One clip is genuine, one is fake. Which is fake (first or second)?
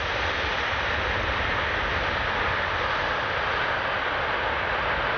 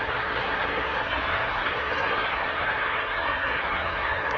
second